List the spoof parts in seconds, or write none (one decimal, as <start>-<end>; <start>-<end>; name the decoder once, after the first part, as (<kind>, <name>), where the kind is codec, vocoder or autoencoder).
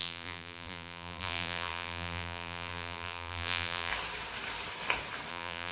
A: 0.0-3.9 (vocoder, BigVGAN v2); 5.3-5.7